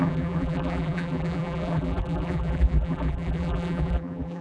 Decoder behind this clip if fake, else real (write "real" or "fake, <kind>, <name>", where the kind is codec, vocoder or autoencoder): fake, vocoder, BigVGAN v2